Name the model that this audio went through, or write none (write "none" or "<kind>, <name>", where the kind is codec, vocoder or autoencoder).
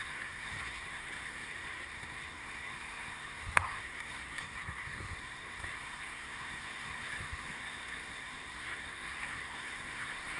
codec, SNAC